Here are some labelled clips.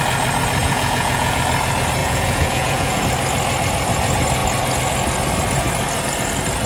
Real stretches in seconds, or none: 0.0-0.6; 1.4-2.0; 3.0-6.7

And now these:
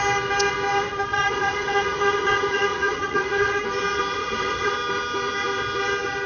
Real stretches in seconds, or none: 0.0-1.1; 3.6-4.2; 4.7-6.3

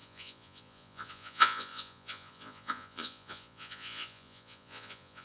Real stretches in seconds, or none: none